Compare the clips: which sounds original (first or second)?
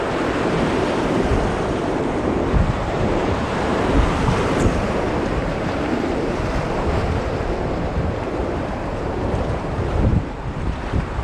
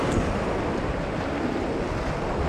second